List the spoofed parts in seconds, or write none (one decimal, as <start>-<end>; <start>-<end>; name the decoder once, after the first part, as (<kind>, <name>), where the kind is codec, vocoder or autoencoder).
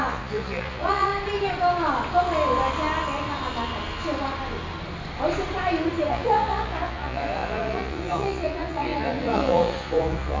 0.0-1.1 (vocoder, Vocos); 6.1-10.4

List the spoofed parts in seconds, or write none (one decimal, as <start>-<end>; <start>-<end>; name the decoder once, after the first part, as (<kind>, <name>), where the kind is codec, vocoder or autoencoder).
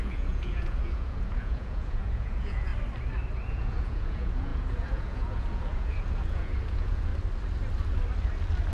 0.0-2.7 (vocoder, Vocos); 3.5-7.1